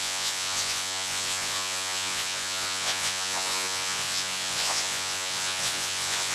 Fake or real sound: fake